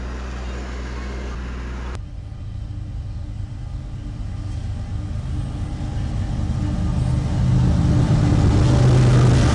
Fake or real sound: real